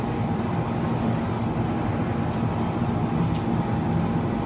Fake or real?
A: real